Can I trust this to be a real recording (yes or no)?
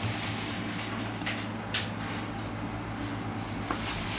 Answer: yes